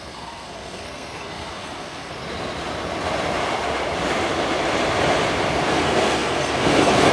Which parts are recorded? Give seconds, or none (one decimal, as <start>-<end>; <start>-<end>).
2.1-5.7